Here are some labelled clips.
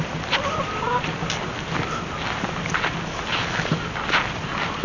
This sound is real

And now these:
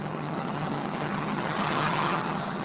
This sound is fake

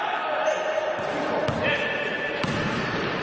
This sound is real